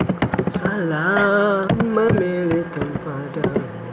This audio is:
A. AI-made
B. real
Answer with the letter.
B